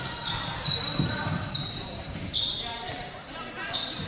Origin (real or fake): fake